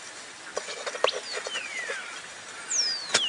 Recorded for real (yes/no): yes